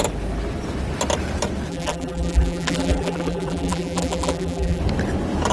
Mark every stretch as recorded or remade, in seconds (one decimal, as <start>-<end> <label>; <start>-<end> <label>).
0.0-1.7 recorded; 1.7-4.8 remade; 4.8-5.5 recorded

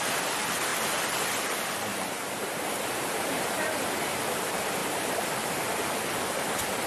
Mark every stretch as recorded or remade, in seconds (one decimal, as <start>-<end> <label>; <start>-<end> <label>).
0.0-1.9 recorded; 1.9-3.8 remade; 3.8-4.8 recorded; 4.8-6.1 remade; 6.1-6.9 recorded

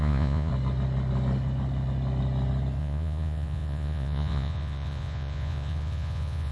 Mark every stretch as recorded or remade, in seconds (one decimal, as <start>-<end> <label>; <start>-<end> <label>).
0.0-0.5 remade; 0.5-2.8 recorded; 2.8-6.5 remade

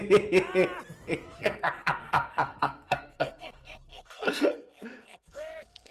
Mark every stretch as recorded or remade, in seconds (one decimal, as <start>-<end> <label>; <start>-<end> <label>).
0.0-1.4 recorded; 1.4-5.9 remade

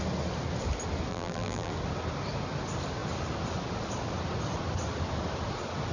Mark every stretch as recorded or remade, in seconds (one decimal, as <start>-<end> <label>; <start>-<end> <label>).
0.0-1.1 recorded; 1.1-1.7 remade; 1.7-5.9 recorded